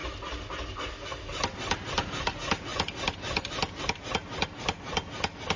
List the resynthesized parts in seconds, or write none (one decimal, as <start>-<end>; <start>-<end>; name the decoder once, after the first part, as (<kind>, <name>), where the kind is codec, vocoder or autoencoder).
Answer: none